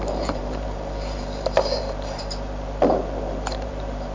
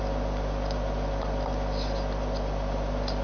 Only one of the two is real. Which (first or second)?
second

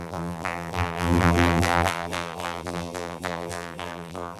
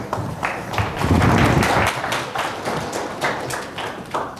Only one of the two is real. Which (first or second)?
second